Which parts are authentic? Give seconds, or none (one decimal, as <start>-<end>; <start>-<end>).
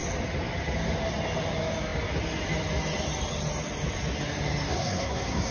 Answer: 0.0-4.7